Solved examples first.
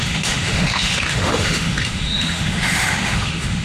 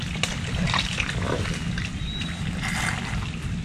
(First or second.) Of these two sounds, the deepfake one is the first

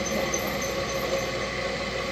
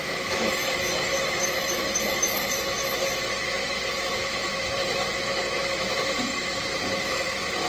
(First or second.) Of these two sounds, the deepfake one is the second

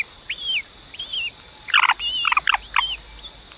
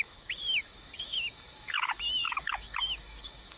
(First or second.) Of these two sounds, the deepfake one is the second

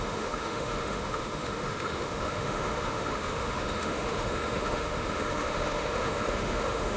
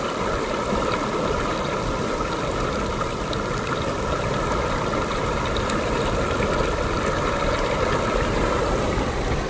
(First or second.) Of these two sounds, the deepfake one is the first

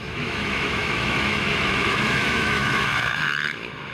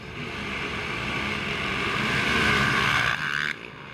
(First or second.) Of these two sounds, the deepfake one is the first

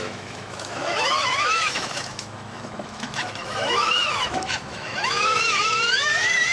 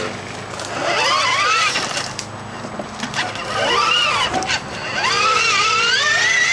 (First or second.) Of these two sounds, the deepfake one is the first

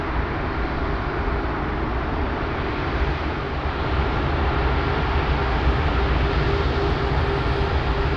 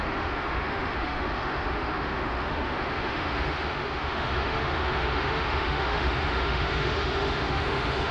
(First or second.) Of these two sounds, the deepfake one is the second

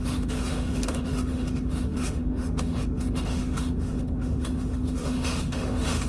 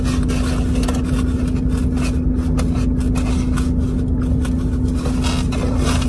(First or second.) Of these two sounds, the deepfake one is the first